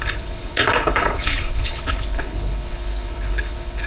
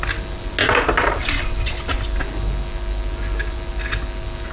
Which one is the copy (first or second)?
first